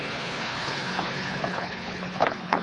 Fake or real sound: fake